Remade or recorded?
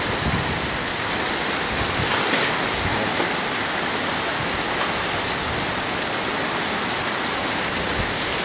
recorded